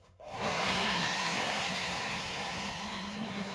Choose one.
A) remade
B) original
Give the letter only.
A